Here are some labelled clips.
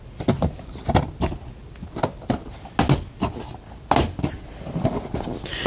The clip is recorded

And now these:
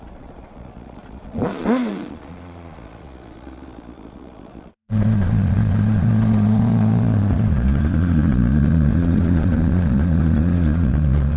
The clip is remade